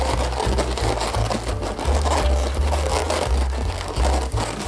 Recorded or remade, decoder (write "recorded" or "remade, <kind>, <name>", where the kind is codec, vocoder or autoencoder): recorded